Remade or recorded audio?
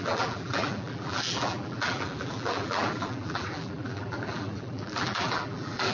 remade